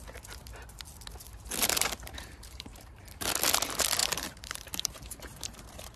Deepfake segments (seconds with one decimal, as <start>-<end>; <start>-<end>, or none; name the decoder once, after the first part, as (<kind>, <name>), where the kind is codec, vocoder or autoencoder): 1.6-3.0 (vocoder, BigVGAN v2); 4.0-6.0